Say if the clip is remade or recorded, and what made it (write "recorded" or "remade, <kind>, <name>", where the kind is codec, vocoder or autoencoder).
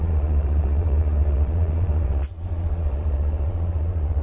remade, vocoder, Vocos